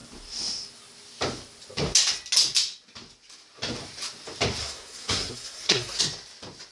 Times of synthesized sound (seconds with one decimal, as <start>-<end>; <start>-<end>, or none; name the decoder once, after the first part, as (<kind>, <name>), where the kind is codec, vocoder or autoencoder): 4.6-6.0 (codec, SNAC)